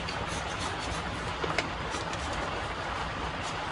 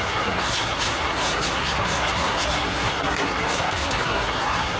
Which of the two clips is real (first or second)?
first